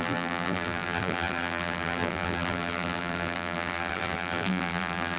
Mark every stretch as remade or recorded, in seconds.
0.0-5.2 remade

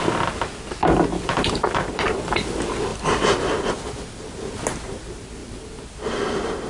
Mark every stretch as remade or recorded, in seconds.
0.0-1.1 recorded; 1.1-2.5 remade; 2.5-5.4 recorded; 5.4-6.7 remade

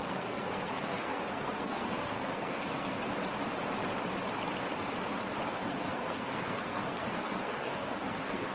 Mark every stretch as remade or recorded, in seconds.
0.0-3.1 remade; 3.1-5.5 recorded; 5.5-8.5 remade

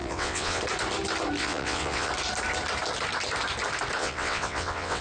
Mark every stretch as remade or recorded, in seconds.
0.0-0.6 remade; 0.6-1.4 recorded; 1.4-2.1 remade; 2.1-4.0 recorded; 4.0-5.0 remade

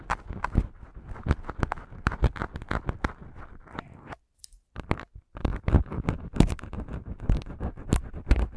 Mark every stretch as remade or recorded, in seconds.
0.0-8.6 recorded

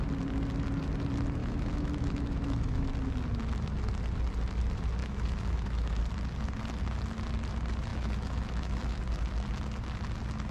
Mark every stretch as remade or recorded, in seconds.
0.0-1.4 recorded; 1.4-2.9 remade; 2.9-5.0 recorded; 5.0-6.0 remade; 6.0-7.9 recorded; 7.9-9.0 remade; 9.0-10.5 recorded